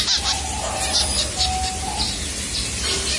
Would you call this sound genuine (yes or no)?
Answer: yes